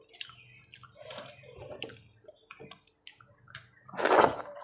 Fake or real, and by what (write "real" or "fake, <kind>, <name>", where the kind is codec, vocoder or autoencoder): real